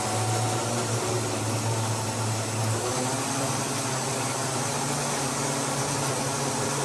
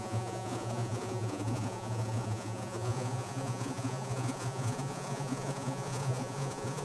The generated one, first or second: second